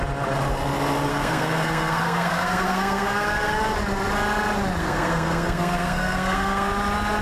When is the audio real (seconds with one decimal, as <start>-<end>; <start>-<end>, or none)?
0.0-1.1; 3.6-4.8; 6.7-7.2